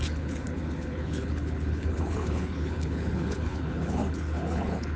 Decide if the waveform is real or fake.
fake